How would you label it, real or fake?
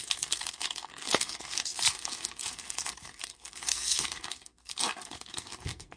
fake